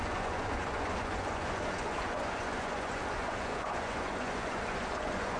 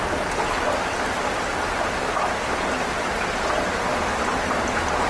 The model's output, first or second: first